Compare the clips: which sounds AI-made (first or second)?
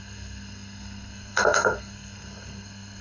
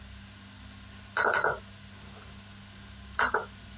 first